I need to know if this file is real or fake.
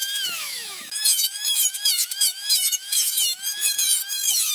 fake